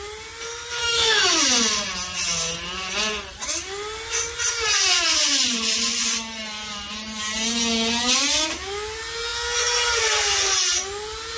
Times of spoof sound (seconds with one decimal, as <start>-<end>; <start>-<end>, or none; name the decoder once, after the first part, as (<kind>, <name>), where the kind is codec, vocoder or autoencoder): 0.8-1.4 (autoencoder, DAC-VAE)